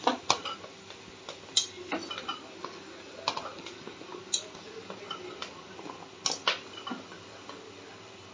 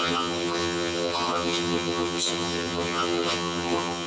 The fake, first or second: second